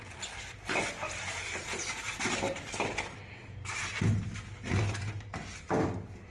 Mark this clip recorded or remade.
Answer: recorded